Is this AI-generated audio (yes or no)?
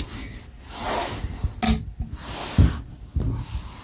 no